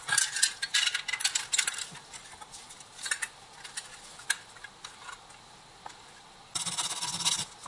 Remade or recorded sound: recorded